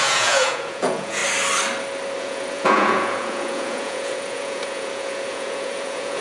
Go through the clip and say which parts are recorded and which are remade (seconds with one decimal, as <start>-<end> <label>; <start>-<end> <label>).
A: 0.0-1.2 remade; 1.2-2.2 recorded; 2.2-6.2 remade